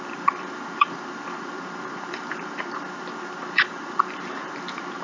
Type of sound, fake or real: fake